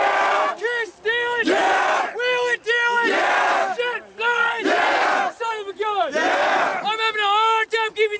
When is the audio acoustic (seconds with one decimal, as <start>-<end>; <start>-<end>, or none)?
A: 0.0-8.2